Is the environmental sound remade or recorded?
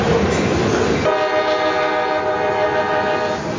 recorded